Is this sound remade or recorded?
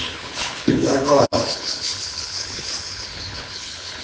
remade